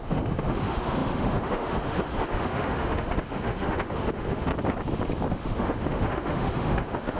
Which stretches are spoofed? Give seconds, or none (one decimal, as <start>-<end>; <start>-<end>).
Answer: 0.0-4.5; 5.3-7.2